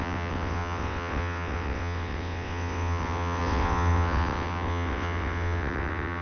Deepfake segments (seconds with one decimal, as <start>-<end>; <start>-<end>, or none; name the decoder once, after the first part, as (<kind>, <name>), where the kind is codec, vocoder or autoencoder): 0.0-6.2 (vocoder, WaveNeXt)